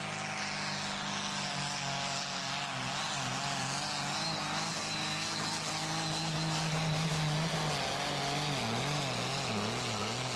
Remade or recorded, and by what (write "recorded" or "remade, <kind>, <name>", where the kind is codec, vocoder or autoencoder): recorded